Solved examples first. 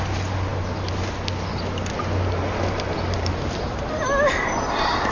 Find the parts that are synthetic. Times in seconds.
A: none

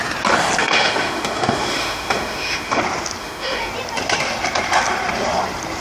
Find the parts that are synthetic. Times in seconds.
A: 0.6-2.8 (autoencoder, DAC-VAE); 3.2-3.7